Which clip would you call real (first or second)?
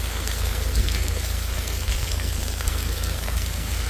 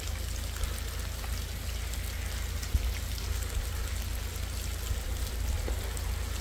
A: second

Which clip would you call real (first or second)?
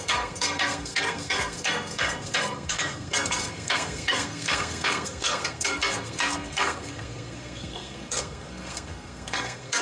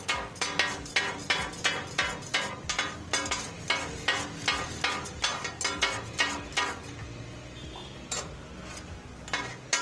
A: second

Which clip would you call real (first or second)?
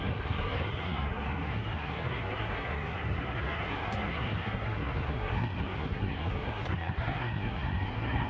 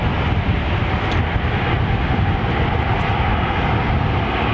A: second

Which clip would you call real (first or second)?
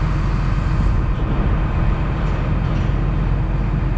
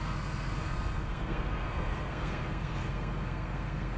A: first